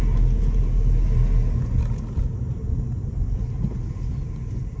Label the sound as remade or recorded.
recorded